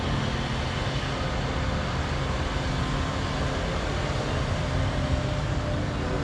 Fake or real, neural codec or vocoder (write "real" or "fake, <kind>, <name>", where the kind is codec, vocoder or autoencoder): real